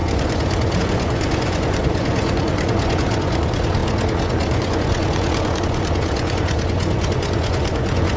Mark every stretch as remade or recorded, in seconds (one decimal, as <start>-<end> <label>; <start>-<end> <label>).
0.0-8.2 remade